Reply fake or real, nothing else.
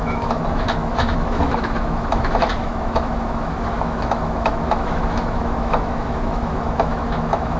fake